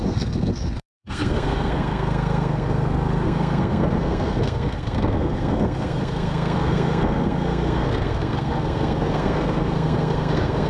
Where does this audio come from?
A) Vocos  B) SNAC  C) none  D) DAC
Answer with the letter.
B